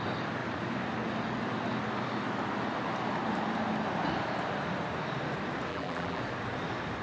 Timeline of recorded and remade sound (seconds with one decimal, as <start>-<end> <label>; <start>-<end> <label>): 0.0-5.7 recorded; 5.7-6.2 remade; 6.2-7.0 recorded